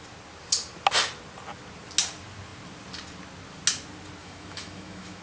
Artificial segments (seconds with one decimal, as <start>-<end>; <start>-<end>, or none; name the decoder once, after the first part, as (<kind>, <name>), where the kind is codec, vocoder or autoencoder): 4.2-5.2 (autoencoder, DAC-VAE)